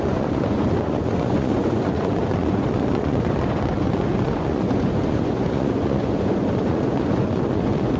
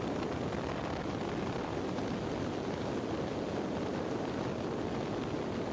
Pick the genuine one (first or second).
second